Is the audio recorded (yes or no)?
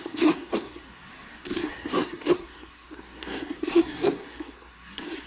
no